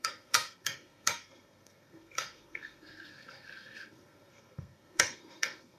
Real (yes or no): no